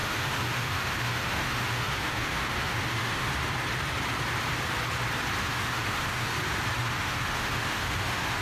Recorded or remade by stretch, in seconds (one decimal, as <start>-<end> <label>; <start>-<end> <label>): 0.0-3.3 remade; 3.3-5.4 recorded; 5.4-6.3 remade; 6.3-6.8 recorded; 6.8-8.4 remade